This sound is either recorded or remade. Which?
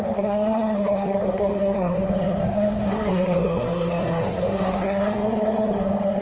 remade